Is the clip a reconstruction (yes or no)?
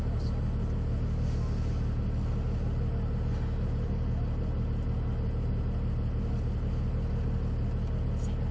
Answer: no